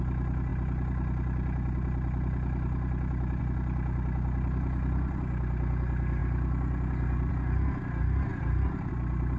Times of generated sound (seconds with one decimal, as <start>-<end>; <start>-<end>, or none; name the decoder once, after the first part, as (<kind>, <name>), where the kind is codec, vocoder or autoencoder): none